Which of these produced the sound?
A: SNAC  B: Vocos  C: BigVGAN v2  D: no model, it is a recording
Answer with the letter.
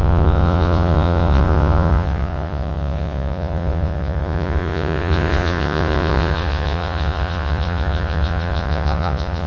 B